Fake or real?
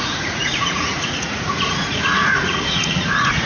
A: fake